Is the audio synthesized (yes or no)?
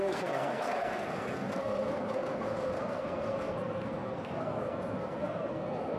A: yes